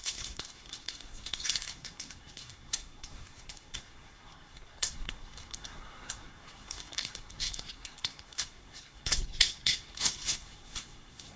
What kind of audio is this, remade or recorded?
remade